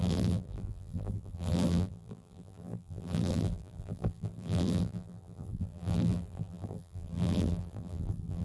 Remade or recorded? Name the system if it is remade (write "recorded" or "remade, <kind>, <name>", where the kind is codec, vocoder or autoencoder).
remade, vocoder, BigVGAN v2